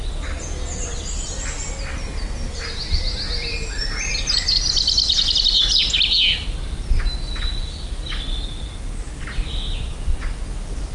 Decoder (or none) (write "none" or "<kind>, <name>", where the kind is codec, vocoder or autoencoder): none